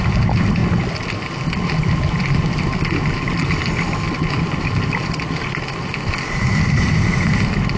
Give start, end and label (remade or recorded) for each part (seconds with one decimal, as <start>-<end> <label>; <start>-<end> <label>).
0.0-7.8 recorded